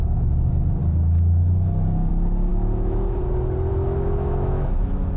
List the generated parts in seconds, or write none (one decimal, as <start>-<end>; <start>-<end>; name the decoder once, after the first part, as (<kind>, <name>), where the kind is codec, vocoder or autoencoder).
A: 2.5-3.2 (autoencoder, DAC-VAE); 3.7-5.2